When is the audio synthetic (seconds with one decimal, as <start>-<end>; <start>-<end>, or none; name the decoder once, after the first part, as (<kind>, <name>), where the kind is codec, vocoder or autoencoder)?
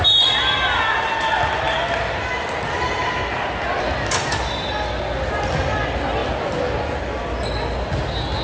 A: none